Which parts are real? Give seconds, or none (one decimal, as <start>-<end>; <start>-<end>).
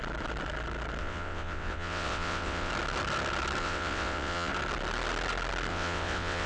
0.0-1.0; 2.7-3.6; 4.5-5.7